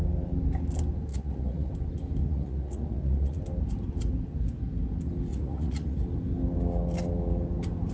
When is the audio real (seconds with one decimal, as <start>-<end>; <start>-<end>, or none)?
0.0-1.1; 1.7-2.2; 3.4-5.3; 6.0-7.9